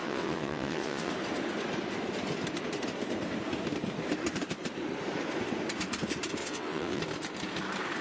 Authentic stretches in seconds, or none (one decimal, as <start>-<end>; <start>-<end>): 1.1-6.4; 7.0-8.0